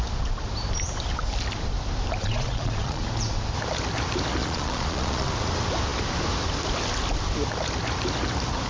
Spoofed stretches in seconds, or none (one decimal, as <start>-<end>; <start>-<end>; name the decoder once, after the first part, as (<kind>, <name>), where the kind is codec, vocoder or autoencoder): 2.2-3.1 (vocoder, Vocos); 4.4-5.3

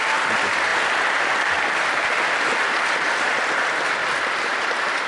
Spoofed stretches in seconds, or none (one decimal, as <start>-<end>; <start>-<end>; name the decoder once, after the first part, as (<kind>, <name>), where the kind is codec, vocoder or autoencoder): none

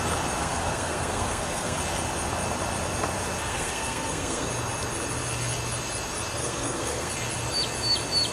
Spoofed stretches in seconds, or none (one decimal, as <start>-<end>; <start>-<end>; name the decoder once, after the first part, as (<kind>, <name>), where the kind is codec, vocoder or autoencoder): 0.4-1.8 (codec, SNAC); 3.5-4.5; 6.4-7.1

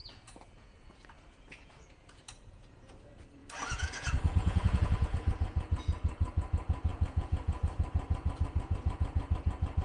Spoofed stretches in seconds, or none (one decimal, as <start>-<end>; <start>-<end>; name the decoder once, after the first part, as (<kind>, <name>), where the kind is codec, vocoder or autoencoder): 0.0-9.8 (vocoder, Vocos)

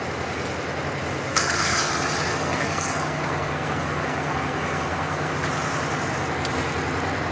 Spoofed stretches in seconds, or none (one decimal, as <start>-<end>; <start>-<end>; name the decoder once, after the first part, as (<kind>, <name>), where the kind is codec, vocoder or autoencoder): 1.3-1.9 (codec, SNAC); 2.3-5.3